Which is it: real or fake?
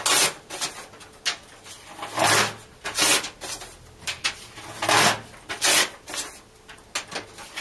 real